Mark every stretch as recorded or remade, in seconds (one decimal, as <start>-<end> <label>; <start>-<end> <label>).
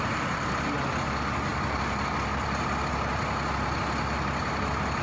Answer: 0.0-5.0 recorded